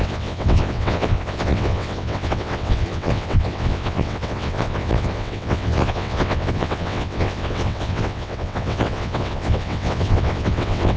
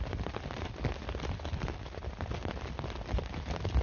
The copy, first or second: first